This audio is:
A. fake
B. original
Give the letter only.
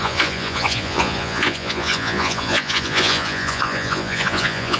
A